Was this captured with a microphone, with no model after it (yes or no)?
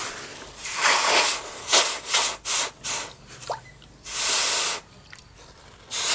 yes